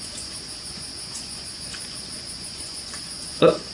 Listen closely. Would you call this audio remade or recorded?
remade